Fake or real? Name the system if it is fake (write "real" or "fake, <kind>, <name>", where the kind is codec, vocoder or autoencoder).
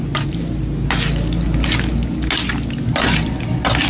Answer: real